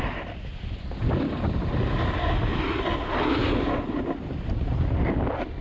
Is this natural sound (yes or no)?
yes